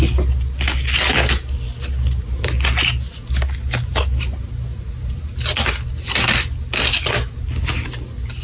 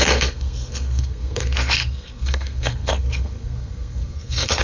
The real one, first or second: first